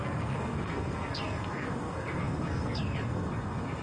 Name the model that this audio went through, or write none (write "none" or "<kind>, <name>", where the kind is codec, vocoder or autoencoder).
codec, SNAC